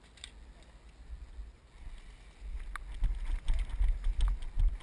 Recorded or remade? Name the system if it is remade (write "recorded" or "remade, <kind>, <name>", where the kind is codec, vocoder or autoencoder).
recorded